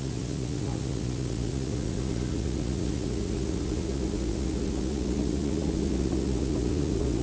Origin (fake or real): fake